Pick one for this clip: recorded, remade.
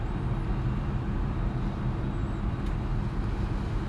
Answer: recorded